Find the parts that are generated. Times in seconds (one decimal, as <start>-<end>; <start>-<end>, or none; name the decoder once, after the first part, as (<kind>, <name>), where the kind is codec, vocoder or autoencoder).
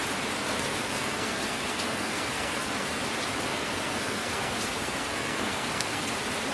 0.4-3.0 (codec, SNAC); 3.5-6.1